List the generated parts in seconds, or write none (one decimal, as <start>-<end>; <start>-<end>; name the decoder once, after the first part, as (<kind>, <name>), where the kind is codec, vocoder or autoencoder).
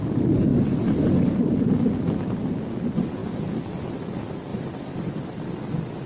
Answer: 4.5-5.1 (vocoder, BigVGAN v2)